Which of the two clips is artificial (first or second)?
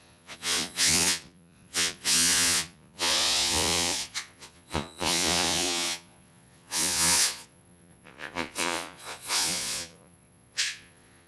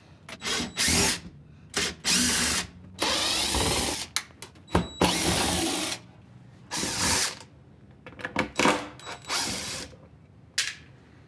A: first